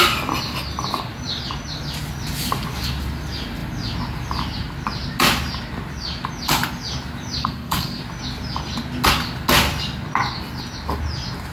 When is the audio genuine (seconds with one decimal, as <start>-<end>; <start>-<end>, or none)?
0.0-7.4; 8.0-11.5